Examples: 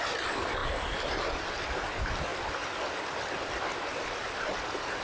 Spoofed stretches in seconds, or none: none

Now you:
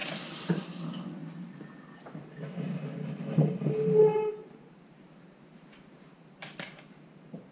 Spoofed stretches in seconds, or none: 4.1-7.5 (vocoder, BigVGAN v2)

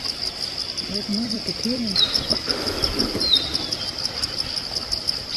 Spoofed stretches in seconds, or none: 1.1-3.9 (vocoder, BigVGAN v2)

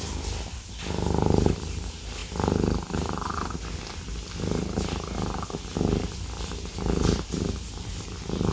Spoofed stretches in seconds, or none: 0.0-2.2 (vocoder, BigVGAN v2); 6.1-8.5

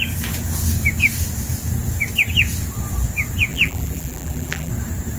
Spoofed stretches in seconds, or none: 3.5-4.7 (vocoder, BigVGAN v2)

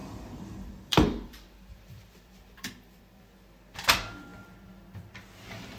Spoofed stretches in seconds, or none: 0.0-3.2 (vocoder, BigVGAN v2)

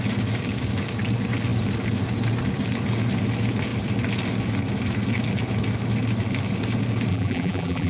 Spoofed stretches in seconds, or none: 7.1-7.9 (vocoder, BigVGAN v2)